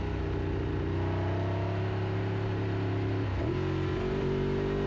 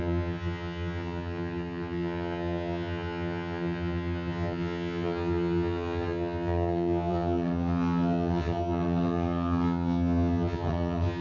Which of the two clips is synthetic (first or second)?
second